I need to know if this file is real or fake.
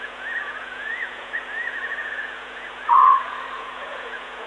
fake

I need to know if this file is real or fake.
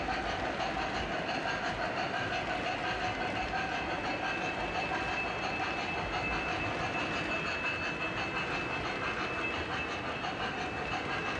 real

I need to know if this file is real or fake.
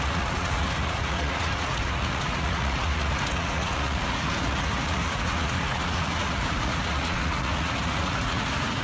fake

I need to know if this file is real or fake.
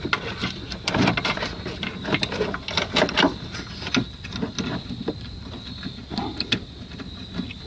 real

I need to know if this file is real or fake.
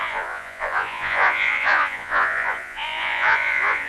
fake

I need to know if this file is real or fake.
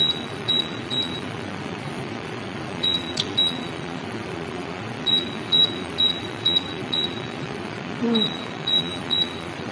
fake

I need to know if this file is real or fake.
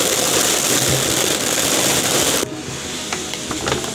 real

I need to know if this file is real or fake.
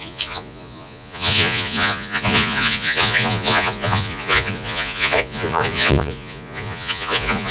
fake